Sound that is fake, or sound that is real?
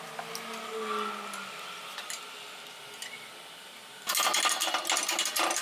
real